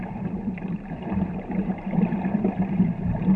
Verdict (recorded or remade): remade